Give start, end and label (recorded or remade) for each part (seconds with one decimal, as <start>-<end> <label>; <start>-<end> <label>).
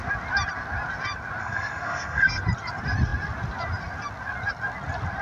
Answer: 0.0-1.4 recorded; 1.4-2.4 remade; 2.4-5.2 recorded